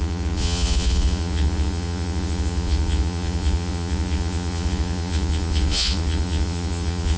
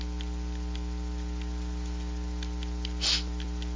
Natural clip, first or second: second